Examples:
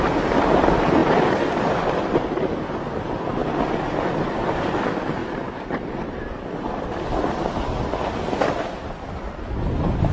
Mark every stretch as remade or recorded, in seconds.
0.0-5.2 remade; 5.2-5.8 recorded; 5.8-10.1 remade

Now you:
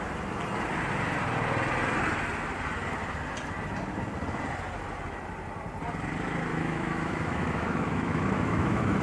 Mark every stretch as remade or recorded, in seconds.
0.0-6.5 recorded; 6.5-9.0 remade

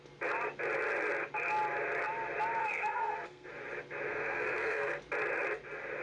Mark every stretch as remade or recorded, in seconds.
0.0-2.6 recorded; 2.6-3.5 remade; 3.5-4.1 recorded; 4.1-5.0 remade; 5.0-6.0 recorded

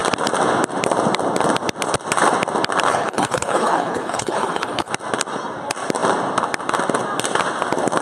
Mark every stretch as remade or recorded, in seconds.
0.0-2.9 recorded; 2.9-4.9 remade; 4.9-8.0 recorded